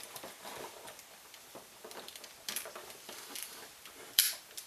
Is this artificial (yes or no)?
yes